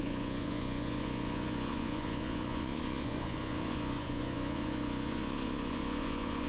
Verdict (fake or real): fake